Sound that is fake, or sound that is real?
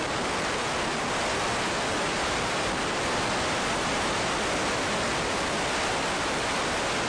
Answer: fake